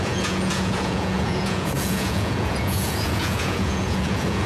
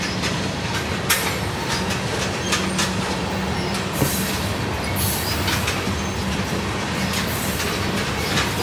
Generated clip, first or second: first